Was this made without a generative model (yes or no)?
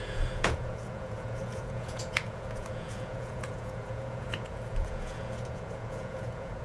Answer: no